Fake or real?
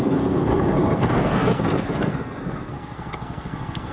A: fake